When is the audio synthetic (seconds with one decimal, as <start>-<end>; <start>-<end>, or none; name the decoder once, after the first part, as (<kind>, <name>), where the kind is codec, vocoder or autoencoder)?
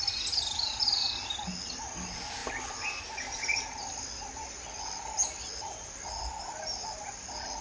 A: none